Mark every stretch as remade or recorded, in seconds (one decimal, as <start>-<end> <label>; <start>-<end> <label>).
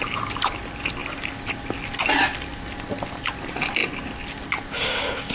0.0-5.3 recorded